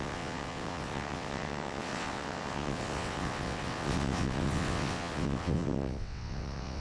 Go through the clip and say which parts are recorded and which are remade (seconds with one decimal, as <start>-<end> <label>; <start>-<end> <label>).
0.0-6.8 remade